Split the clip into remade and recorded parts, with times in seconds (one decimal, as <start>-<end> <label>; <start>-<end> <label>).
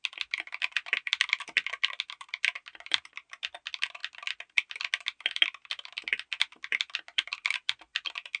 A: 0.0-8.4 recorded